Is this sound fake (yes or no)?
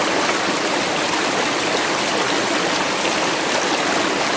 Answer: no